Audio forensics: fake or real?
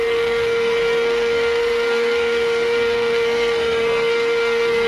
fake